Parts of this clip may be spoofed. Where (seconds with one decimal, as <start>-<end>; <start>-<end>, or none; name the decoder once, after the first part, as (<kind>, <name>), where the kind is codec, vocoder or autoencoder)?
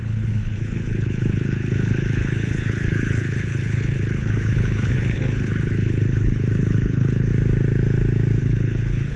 0.0-7.3 (codec, HILCodec); 8.4-9.2